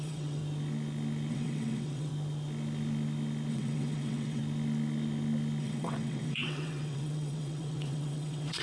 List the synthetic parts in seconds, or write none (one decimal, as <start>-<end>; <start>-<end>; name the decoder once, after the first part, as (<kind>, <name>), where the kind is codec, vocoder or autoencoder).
0.0-0.4 (vocoder, WaveNeXt); 1.3-2.1; 3.5-4.4; 5.6-8.6